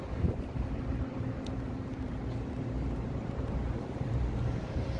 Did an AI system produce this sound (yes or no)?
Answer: yes